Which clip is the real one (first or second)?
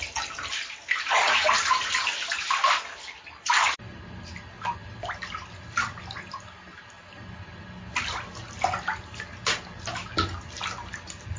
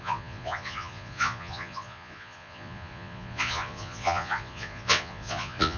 first